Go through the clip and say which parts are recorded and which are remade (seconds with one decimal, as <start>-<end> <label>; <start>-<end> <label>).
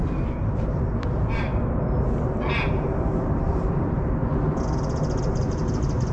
0.0-4.2 remade; 4.2-5.2 recorded; 5.2-6.1 remade